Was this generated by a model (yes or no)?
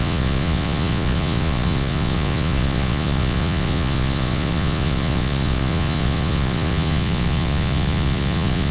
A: yes